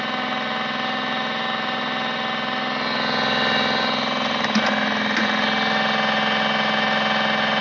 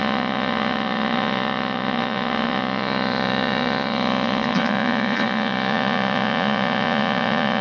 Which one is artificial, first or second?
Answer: second